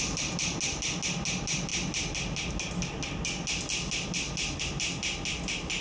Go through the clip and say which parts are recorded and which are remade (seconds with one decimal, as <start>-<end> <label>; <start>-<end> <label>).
0.0-5.8 recorded